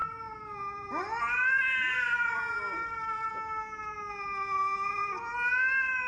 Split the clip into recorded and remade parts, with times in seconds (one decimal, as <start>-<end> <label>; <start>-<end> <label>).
0.0-3.3 remade; 3.3-6.1 recorded